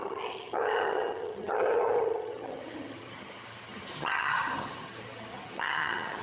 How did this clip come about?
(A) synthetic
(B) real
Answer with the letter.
A